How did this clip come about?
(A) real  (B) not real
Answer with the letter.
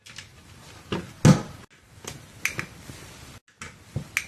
A